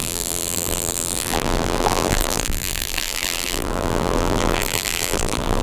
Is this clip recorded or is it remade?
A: remade